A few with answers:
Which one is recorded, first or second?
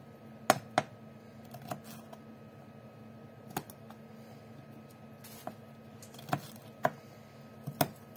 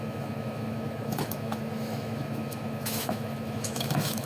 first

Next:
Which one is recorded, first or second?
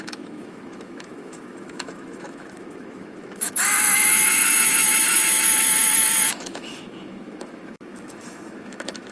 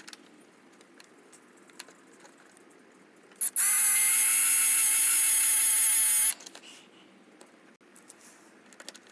second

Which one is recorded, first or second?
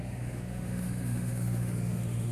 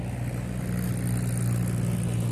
second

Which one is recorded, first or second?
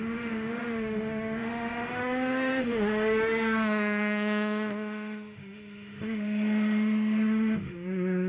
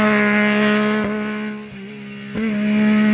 second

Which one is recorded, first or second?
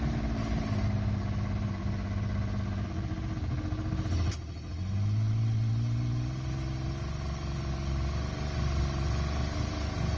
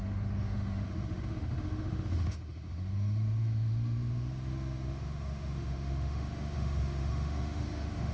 first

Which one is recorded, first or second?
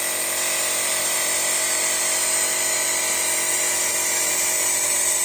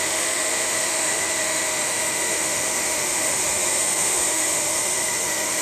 first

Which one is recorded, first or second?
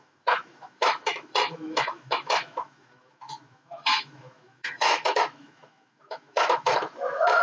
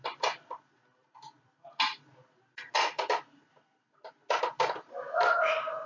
second